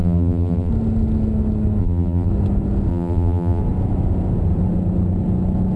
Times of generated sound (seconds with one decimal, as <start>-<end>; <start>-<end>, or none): 0.0-0.7; 1.8-2.3; 2.9-3.6